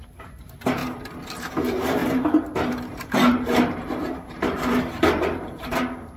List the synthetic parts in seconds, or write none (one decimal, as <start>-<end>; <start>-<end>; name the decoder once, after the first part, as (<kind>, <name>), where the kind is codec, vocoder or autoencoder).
0.0-0.8 (vocoder, BigVGAN v2); 1.5-6.2